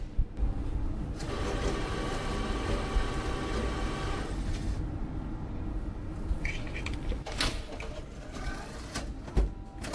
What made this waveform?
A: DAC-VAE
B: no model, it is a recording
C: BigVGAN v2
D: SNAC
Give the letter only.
B